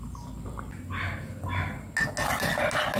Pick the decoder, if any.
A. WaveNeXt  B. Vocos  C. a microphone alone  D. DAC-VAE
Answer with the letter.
C